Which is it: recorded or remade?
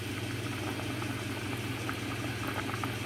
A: recorded